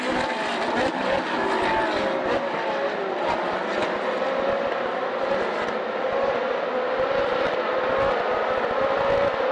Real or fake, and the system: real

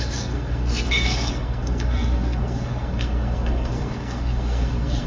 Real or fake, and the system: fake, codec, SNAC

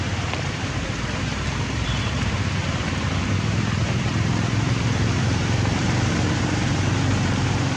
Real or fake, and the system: fake, vocoder, BigVGAN v2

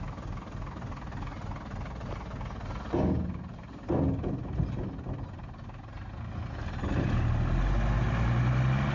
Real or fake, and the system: real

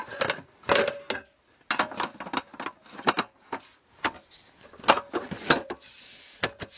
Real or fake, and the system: real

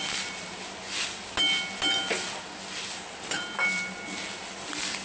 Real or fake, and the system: real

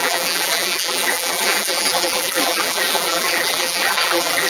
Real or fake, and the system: fake, vocoder, BigVGAN v2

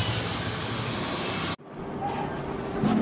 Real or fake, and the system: real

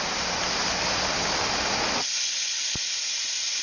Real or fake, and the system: real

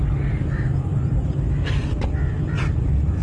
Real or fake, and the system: real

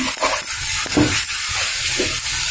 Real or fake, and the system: real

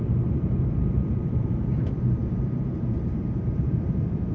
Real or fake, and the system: fake, vocoder, BigVGAN v2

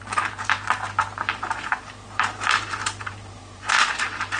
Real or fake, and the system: fake, vocoder, BigVGAN v2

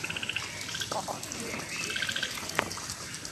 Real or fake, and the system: real